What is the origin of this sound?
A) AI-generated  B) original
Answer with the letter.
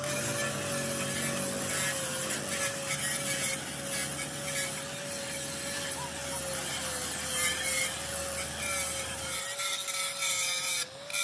B